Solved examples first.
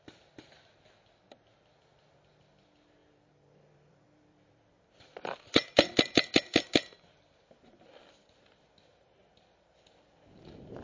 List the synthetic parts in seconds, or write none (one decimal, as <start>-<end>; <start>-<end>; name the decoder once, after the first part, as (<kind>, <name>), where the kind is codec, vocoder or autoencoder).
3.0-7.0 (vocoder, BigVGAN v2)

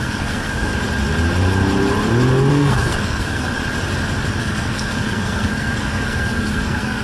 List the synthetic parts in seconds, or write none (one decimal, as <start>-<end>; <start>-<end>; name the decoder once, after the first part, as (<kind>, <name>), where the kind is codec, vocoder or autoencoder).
0.0-0.7 (codec, SNAC); 2.5-3.6; 4.4-7.0

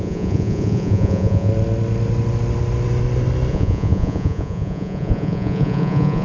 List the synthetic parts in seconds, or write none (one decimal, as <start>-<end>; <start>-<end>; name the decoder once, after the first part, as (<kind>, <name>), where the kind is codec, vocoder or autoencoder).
0.0-1.5 (vocoder, Vocos); 3.5-6.2